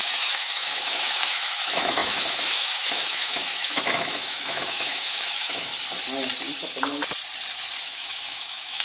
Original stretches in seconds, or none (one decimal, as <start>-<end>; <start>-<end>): 5.7-7.8

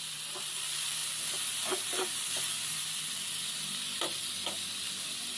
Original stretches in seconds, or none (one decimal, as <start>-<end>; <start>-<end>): 0.0-5.4